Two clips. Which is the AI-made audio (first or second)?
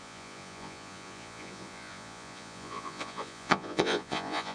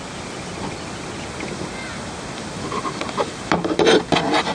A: first